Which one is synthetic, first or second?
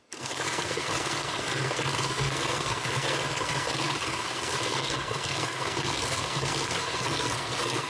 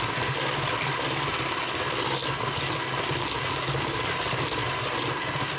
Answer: first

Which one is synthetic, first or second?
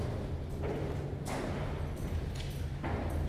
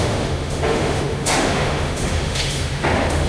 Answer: second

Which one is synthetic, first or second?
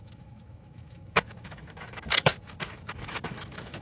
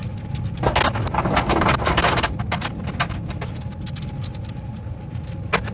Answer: first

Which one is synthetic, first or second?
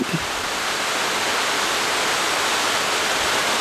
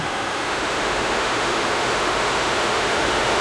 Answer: second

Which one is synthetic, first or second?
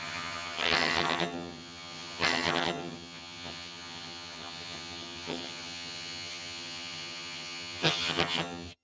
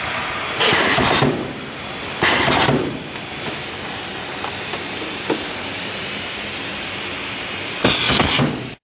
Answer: first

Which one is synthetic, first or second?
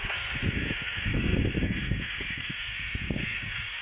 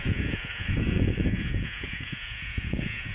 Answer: second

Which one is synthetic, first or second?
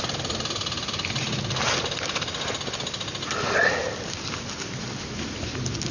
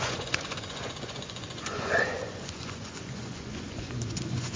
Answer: second